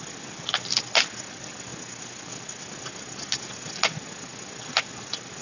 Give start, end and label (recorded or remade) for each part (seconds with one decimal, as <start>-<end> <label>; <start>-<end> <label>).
0.0-5.4 recorded